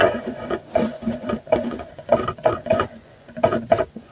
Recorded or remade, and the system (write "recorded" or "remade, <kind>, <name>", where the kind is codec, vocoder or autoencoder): remade, vocoder, Vocos